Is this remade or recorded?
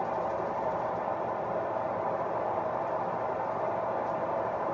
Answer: recorded